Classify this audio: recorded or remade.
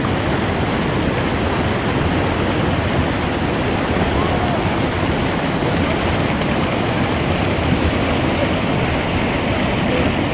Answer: recorded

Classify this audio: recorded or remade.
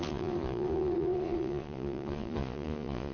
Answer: remade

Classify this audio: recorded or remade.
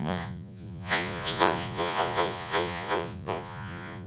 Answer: remade